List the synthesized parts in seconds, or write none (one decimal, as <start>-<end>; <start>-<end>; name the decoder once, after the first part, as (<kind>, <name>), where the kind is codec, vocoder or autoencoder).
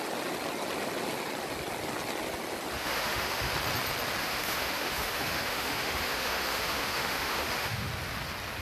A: 2.8-3.5 (autoencoder, DAC-VAE); 4.2-7.9